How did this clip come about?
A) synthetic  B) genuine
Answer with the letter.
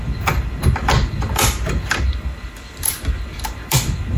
A